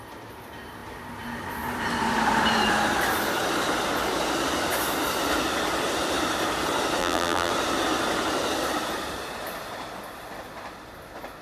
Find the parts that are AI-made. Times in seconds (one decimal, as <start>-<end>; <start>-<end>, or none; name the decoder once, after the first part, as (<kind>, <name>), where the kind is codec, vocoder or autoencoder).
7.0-7.5 (vocoder, BigVGAN v2)

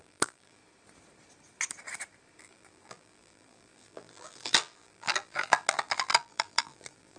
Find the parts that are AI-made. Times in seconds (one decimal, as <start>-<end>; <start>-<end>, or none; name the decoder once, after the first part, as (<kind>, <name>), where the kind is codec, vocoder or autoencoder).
0.0-0.6 (vocoder, BigVGAN v2); 2.4-7.2

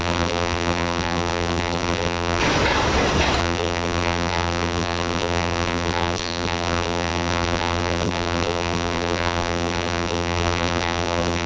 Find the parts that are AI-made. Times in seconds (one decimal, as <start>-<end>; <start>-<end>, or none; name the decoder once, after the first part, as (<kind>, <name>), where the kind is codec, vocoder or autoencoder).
0.0-2.4 (vocoder, BigVGAN v2); 3.4-11.5

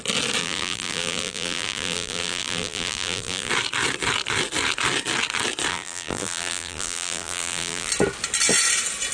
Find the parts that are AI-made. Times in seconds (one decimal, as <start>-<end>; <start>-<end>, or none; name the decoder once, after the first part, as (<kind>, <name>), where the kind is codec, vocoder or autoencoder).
0.4-3.5 (vocoder, BigVGAN v2); 5.7-7.9

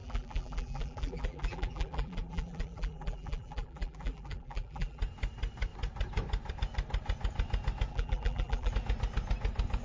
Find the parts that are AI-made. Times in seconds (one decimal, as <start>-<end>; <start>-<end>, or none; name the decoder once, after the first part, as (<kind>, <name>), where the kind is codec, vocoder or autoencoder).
0.0-5.0 (vocoder, BigVGAN v2); 7.9-8.7

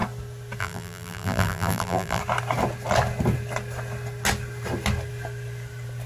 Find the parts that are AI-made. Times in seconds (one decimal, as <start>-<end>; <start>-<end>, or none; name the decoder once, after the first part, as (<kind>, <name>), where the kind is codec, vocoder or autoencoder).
0.6-2.2 (vocoder, BigVGAN v2)

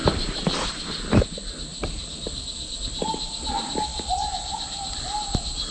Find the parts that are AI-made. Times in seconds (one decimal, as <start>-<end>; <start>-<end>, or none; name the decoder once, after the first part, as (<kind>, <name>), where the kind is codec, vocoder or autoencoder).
0.0-0.8 (vocoder, BigVGAN v2); 1.7-2.8; 3.9-5.7

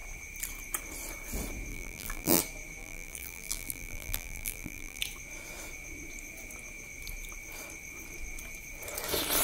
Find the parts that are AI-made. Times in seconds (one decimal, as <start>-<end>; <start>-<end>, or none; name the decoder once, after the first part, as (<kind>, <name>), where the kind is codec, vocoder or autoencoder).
1.7-2.4 (vocoder, BigVGAN v2); 2.8-5.0